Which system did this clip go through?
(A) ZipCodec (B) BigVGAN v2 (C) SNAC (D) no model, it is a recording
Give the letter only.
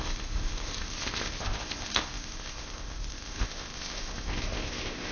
A